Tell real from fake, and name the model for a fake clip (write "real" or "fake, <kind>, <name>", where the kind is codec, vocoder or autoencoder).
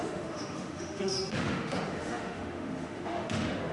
fake, autoencoder, DAC-VAE